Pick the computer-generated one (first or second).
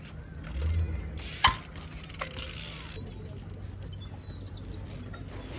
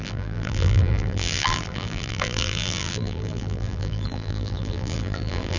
second